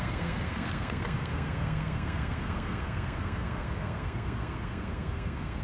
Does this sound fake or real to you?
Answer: fake